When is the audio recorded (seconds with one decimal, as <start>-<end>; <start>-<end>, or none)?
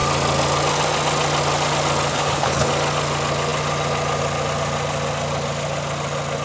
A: 0.0-2.1; 2.7-6.4